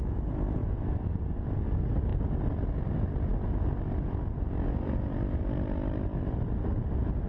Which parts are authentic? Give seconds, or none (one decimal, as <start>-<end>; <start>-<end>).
0.0-0.6; 1.2-2.1; 2.7-7.3